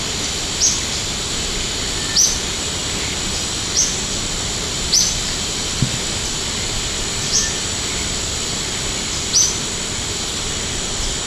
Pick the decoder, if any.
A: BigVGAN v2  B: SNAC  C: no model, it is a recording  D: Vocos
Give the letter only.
C